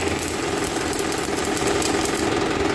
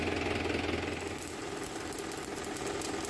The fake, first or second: first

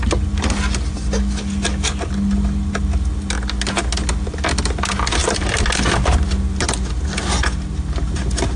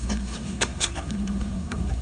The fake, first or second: second